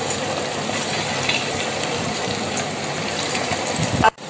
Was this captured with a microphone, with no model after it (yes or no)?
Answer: no